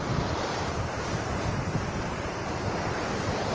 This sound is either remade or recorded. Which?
remade